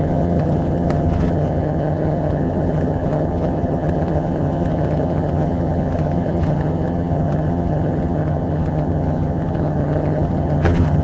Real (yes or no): no